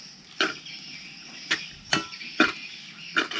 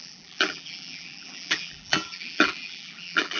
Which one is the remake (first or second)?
second